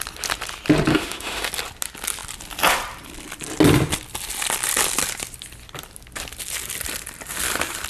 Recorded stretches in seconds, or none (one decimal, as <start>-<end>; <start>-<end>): 0.0-0.9; 1.5-7.9